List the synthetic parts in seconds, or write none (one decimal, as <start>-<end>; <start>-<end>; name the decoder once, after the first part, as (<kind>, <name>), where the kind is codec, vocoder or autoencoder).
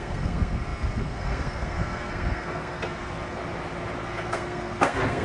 0.0-3.4 (codec, SNAC); 4.0-5.2